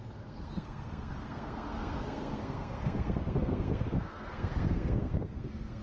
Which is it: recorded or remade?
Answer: remade